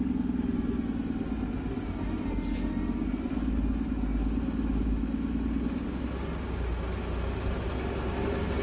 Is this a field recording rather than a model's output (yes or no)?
yes